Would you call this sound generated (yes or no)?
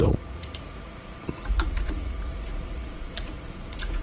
yes